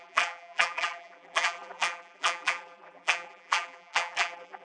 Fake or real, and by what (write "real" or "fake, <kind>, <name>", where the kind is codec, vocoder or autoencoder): fake, vocoder, BigVGAN v2